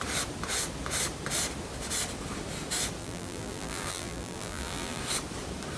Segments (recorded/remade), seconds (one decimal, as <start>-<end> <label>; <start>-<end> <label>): 0.0-3.0 recorded; 3.0-5.0 remade; 5.0-5.8 recorded